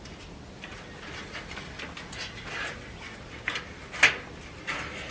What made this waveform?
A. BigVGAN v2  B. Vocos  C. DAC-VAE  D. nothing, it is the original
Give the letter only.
D